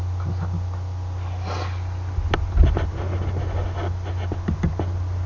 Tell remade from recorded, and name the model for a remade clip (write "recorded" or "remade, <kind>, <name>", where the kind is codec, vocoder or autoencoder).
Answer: recorded